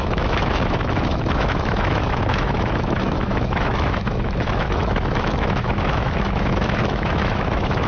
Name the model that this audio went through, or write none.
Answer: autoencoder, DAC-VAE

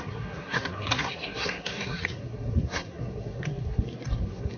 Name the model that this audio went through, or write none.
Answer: codec, SNAC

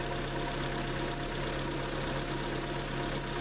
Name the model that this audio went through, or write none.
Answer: none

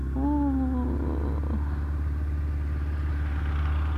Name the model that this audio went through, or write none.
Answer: none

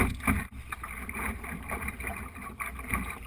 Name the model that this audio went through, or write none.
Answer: none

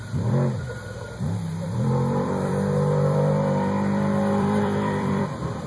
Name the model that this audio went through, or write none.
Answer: vocoder, BigVGAN v2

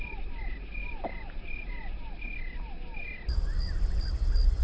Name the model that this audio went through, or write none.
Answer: none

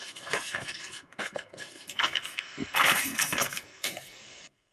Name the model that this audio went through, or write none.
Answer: codec, SNAC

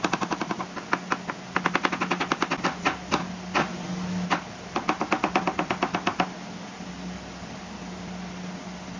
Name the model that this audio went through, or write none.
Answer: none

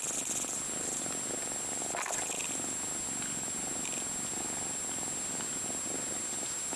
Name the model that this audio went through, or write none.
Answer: none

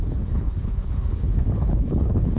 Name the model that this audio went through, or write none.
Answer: codec, HILCodec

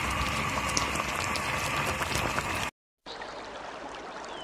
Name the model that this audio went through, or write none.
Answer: none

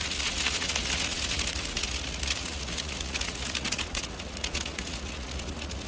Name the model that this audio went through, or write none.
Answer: vocoder, Vocos